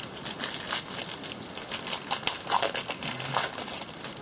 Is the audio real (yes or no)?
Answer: yes